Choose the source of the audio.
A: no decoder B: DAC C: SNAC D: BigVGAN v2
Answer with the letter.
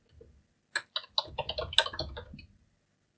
A